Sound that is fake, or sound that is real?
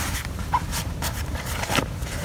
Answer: fake